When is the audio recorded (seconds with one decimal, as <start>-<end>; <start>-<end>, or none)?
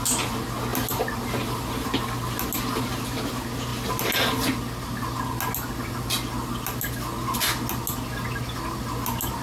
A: 0.0-9.4